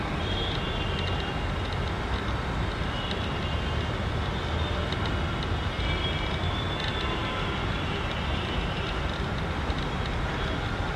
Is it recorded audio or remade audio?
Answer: recorded